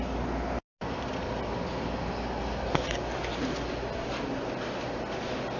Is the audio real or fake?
real